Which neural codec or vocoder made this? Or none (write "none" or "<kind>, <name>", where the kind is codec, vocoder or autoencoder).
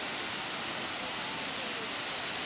none